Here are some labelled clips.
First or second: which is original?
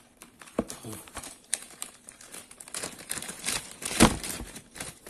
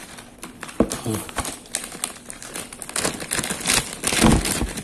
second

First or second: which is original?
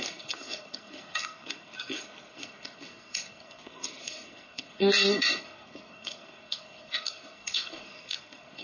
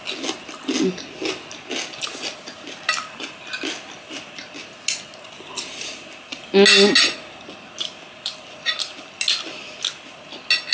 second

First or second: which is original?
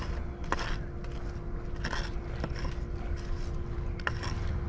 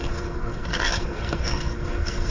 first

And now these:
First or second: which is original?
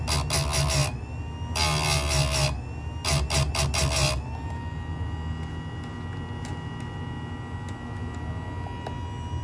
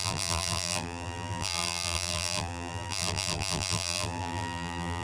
first